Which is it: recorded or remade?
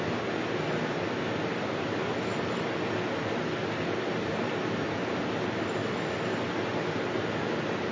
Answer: recorded